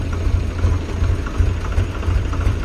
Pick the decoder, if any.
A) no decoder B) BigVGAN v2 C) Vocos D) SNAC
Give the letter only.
A